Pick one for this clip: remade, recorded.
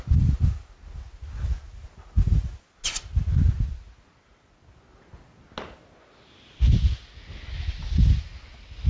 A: recorded